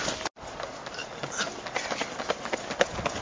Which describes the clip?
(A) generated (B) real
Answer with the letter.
B